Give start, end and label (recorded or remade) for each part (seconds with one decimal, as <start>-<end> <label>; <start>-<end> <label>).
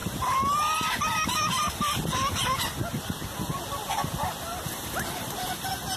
0.0-6.0 recorded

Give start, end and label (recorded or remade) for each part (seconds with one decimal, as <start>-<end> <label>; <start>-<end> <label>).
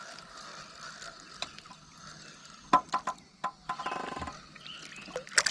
0.0-5.5 recorded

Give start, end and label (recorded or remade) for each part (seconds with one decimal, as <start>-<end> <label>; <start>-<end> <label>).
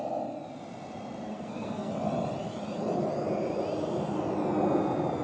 0.0-1.3 recorded; 1.3-1.9 remade; 1.9-5.2 recorded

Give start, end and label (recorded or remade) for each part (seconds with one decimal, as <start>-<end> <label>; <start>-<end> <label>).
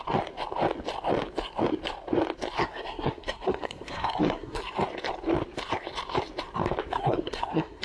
0.0-2.6 recorded; 2.6-4.6 remade; 4.6-6.9 recorded; 6.9-7.8 remade